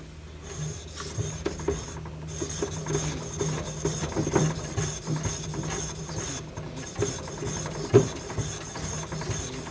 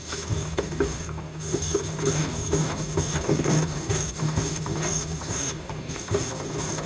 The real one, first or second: first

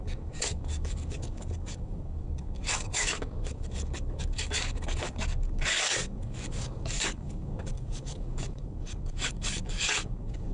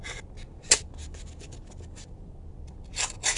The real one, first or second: second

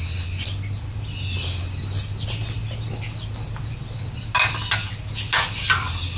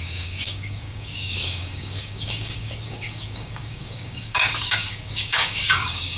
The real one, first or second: first